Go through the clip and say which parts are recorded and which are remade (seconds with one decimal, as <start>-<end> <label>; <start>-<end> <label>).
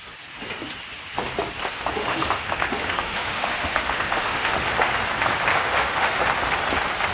0.0-1.6 recorded; 1.6-4.5 remade; 4.5-5.5 recorded; 5.5-6.1 remade; 6.1-7.1 recorded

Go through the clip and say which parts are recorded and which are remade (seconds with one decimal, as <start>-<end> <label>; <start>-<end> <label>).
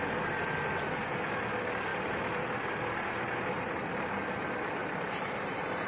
0.0-4.8 recorded; 4.8-5.9 remade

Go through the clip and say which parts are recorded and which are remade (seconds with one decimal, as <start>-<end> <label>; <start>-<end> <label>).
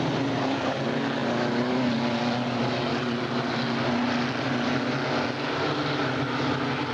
0.0-6.9 recorded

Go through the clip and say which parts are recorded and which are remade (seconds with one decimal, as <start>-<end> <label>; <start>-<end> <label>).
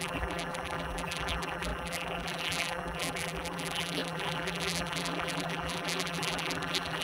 0.0-7.0 remade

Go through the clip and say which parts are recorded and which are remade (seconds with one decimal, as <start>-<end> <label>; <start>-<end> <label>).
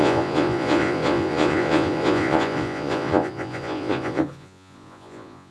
0.0-5.5 remade